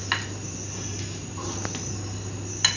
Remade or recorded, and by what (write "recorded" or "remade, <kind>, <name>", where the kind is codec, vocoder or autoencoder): recorded